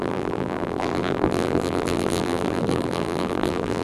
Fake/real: fake